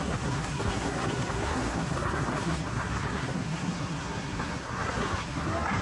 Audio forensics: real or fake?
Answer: fake